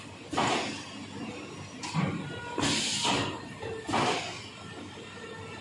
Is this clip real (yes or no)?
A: yes